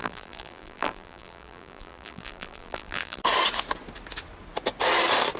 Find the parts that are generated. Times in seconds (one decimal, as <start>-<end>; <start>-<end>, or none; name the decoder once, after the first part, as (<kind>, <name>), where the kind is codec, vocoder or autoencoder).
0.0-3.2 (vocoder, BigVGAN v2)